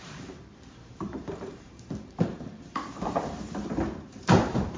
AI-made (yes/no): yes